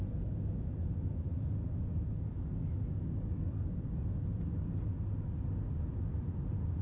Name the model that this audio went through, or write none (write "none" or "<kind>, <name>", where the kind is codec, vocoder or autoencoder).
none